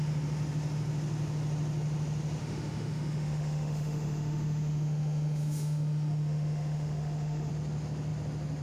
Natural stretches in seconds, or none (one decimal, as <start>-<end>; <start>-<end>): 0.0-2.4; 7.5-8.6